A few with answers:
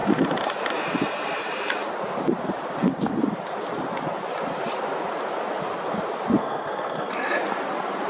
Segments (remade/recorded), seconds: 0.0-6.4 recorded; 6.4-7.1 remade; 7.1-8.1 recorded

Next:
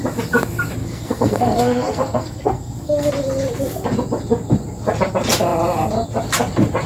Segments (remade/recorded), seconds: 0.0-0.8 recorded; 0.8-3.1 remade; 3.1-6.9 recorded

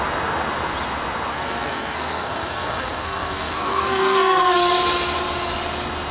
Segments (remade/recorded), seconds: 0.0-1.3 recorded; 1.3-4.5 remade; 4.5-6.1 recorded

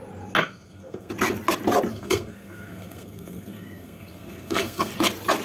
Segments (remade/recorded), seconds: 0.0-0.4 recorded; 0.4-1.1 remade; 1.1-1.9 recorded; 1.9-4.9 remade; 4.9-5.4 recorded